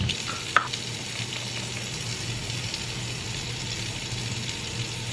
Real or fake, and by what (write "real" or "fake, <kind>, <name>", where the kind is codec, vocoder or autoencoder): real